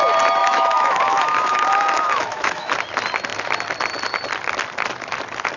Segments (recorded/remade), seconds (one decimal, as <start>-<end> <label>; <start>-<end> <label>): 0.0-0.4 recorded; 0.4-2.7 remade; 2.7-5.6 recorded